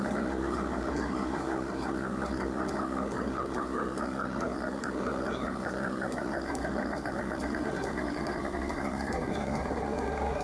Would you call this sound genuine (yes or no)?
no